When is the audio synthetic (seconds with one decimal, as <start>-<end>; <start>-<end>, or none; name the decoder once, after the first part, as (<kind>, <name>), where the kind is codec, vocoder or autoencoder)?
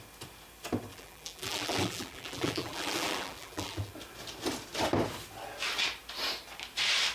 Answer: 0.9-3.9 (vocoder, BigVGAN v2)